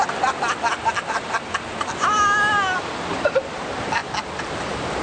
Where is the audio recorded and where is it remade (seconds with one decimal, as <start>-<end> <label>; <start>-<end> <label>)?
0.0-5.0 recorded